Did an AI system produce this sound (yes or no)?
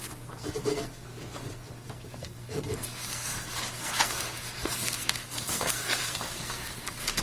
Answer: yes